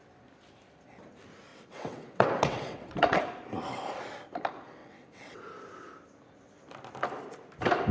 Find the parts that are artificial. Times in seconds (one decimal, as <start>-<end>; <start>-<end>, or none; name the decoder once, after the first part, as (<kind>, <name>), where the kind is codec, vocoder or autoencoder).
1.5-3.2 (vocoder, WaveNeXt); 4.8-5.4